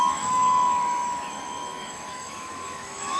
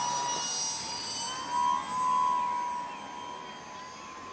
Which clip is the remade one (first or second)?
first